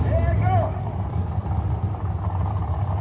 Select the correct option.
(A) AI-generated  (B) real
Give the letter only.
B